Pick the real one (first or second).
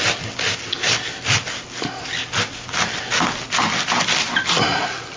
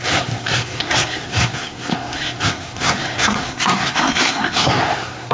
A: first